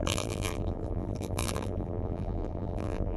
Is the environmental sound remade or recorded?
remade